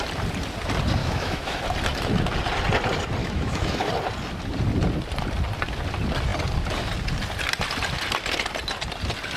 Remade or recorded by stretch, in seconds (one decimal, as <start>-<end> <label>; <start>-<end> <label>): 0.0-1.0 recorded; 1.0-1.6 remade; 1.6-3.2 recorded; 3.2-3.9 remade; 3.9-9.4 recorded

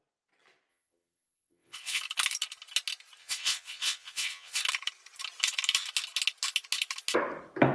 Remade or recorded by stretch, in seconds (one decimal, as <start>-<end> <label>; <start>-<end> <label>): 0.0-0.7 recorded; 0.7-2.0 remade; 2.0-3.2 recorded; 3.2-4.6 remade; 4.6-7.7 recorded

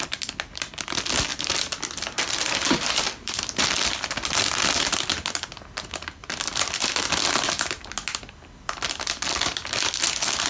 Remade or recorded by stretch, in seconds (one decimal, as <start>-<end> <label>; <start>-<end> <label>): 0.0-1.3 recorded; 1.3-3.6 remade; 3.6-10.5 recorded

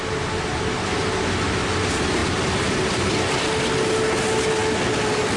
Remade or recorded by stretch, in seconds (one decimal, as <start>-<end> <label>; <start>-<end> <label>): 0.0-4.6 recorded; 4.6-5.4 remade